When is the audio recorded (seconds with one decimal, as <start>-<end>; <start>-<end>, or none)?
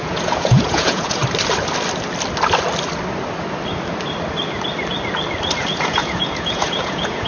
1.2-5.6